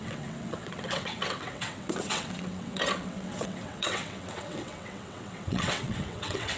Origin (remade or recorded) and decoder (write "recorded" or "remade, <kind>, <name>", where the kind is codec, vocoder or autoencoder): remade, vocoder, WaveNeXt